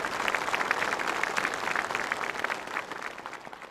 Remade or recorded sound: recorded